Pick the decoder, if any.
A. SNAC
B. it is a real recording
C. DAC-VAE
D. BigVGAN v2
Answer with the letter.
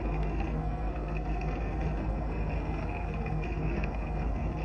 A